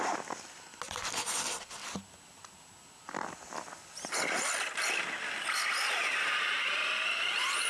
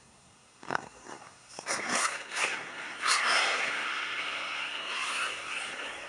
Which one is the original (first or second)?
first